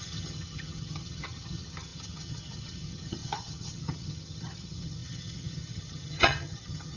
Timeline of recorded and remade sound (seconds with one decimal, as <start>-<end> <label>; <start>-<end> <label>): 0.0-7.0 remade